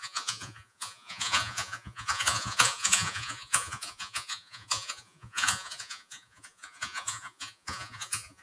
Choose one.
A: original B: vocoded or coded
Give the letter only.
B